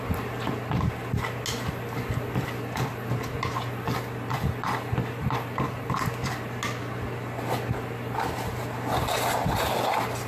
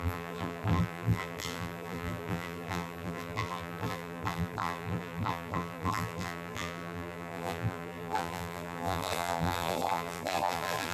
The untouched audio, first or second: first